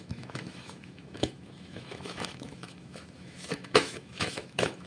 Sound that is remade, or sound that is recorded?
remade